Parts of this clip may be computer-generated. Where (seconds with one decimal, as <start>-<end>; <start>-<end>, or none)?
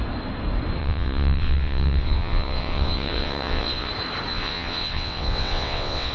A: 0.8-3.9; 4.3-6.1